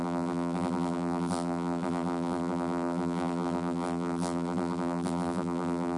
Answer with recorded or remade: remade